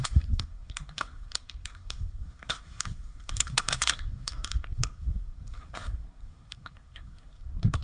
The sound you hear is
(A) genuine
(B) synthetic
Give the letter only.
B